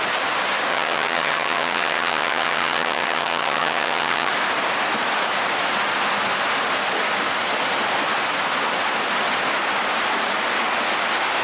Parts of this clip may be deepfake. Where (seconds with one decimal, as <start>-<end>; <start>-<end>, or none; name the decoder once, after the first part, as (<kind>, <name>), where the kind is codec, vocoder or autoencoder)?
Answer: 0.7-4.3 (vocoder, HiFi-GAN)